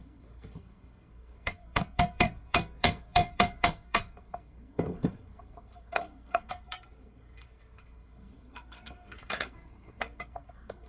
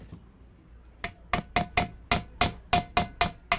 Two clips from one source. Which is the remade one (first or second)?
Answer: first